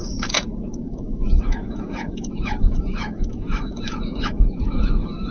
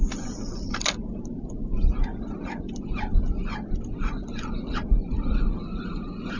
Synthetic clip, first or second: first